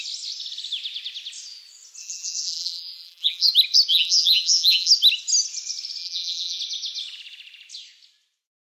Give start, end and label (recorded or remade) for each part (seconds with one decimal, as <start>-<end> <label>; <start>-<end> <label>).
0.0-2.0 recorded; 2.0-3.5 remade; 3.5-3.9 recorded; 3.9-4.9 remade; 4.9-6.0 recorded; 6.0-6.6 remade; 6.6-8.6 recorded